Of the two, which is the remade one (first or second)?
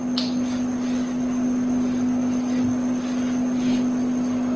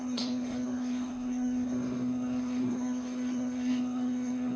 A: second